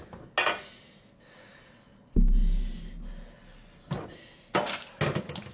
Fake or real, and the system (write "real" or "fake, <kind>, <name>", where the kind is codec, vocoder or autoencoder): real